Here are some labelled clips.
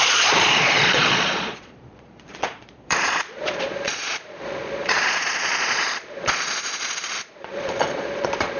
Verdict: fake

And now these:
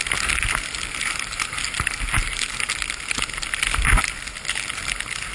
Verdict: real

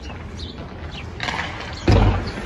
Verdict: real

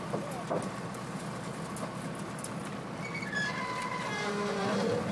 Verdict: real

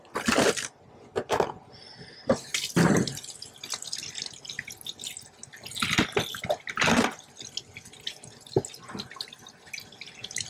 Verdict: real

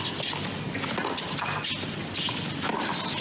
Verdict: real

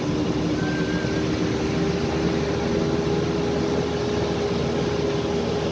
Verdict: real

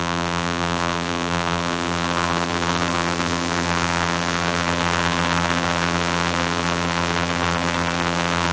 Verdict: fake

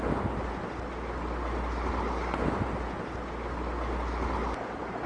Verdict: real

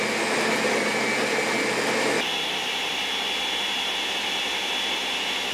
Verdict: real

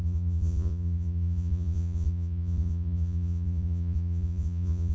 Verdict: fake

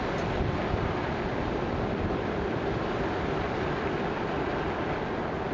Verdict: real